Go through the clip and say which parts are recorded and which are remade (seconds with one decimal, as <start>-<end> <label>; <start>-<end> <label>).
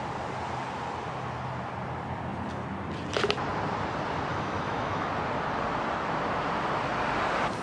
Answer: 0.0-4.3 recorded; 4.3-5.1 remade; 5.1-7.6 recorded